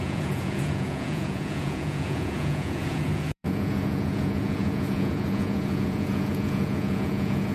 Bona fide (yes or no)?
no